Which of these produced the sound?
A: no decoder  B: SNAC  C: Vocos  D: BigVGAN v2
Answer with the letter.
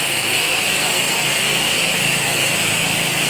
B